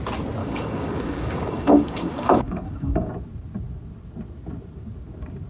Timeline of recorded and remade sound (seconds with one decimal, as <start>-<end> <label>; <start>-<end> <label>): 0.0-0.4 recorded; 0.4-3.1 remade; 3.1-5.5 recorded